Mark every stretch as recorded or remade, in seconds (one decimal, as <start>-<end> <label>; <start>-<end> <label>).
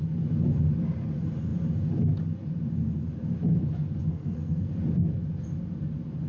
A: 0.0-4.1 recorded; 4.1-4.7 remade; 4.7-6.3 recorded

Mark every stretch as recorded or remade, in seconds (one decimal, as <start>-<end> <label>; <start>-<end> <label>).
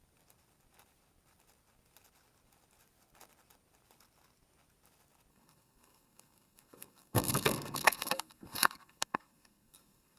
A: 0.0-5.3 recorded; 5.3-10.2 remade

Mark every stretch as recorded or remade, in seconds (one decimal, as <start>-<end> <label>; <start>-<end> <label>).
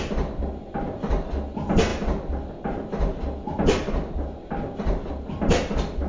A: 0.0-6.1 recorded